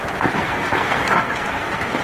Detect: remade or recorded remade